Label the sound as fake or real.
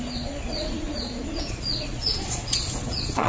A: fake